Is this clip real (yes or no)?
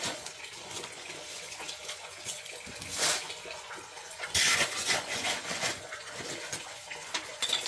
no